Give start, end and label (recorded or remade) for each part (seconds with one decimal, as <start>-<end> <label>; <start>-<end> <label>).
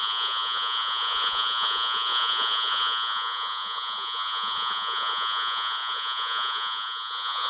0.0-7.5 remade